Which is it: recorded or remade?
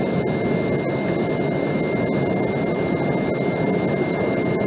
recorded